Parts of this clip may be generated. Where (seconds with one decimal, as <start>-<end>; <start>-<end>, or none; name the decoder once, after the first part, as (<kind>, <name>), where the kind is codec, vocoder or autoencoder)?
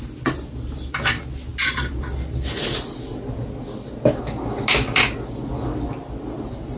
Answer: none